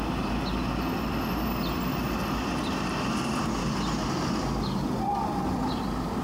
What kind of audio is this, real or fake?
real